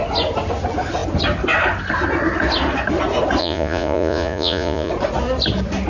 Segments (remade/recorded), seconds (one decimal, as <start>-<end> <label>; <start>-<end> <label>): 0.0-3.4 recorded; 3.4-4.9 remade; 4.9-5.9 recorded